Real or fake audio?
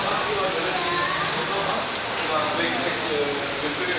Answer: real